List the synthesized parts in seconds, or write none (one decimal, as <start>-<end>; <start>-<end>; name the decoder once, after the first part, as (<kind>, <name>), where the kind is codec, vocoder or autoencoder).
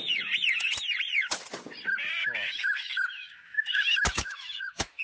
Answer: 2.2-5.0 (autoencoder, DAC-VAE)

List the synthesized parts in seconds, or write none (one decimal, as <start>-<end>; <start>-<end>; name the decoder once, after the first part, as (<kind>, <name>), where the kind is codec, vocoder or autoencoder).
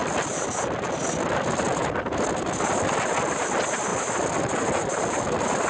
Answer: 1.8-2.7 (vocoder, BigVGAN v2); 3.9-4.5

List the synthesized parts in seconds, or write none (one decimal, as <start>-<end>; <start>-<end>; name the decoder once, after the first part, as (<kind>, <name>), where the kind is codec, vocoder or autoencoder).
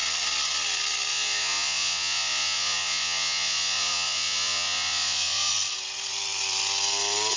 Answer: 1.1-5.5 (vocoder, Vocos)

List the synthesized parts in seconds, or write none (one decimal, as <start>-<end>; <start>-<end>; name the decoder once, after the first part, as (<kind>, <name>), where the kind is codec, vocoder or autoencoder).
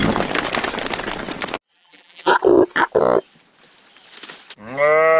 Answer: 1.7-2.3 (vocoder, BigVGAN v2)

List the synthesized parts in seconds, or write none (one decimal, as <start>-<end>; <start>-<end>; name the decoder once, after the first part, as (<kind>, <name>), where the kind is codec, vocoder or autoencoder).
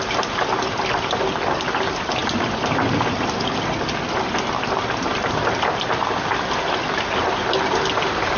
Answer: none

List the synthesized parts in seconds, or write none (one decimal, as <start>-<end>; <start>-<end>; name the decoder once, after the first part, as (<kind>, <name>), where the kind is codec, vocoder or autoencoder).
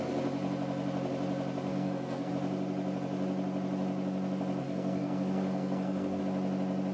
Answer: 1.7-2.3 (codec, SNAC); 4.6-6.2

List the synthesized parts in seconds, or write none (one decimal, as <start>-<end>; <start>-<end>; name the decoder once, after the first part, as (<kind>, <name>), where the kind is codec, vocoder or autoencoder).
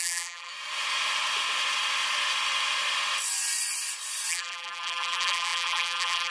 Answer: 0.0-0.5 (vocoder, BigVGAN v2); 4.3-6.3